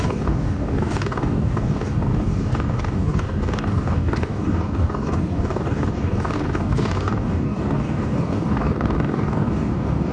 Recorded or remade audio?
remade